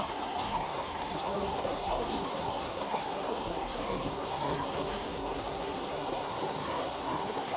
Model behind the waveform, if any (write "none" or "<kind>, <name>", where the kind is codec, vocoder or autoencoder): codec, SNAC